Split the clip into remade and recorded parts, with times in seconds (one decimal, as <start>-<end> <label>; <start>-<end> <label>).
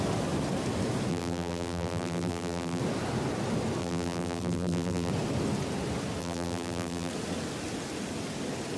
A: 0.0-1.1 recorded; 1.1-2.8 remade; 2.8-3.8 recorded; 3.8-5.1 remade; 5.1-6.2 recorded; 6.2-7.1 remade; 7.1-8.8 recorded